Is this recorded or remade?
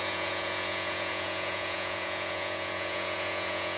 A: remade